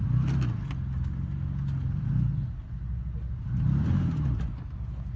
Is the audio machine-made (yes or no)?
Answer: no